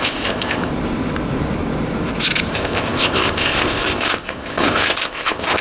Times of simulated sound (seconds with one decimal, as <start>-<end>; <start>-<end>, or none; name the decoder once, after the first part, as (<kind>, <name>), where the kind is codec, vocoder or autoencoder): 0.0-0.7 (codec, ZipCodec); 2.5-5.6